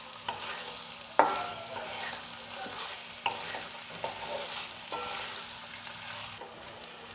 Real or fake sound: real